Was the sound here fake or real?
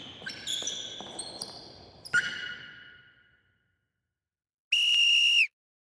real